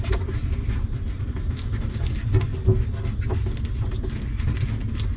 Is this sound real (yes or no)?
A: yes